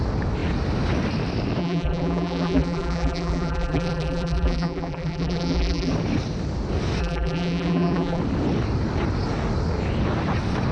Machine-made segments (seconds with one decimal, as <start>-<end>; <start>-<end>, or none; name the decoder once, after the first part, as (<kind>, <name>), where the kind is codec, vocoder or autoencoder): 1.6-5.9 (vocoder, BigVGAN v2); 7.0-8.2